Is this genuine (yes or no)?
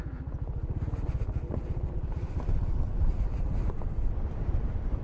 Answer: yes